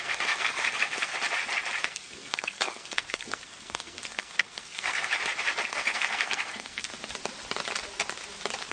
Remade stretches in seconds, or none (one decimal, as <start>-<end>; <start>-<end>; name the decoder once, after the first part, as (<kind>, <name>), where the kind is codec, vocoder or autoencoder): 0.0-1.1 (codec, SNAC); 1.8-5.1; 5.7-6.9